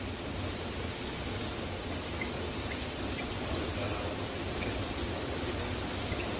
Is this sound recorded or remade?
recorded